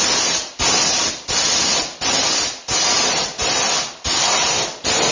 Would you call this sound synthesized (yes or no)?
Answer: no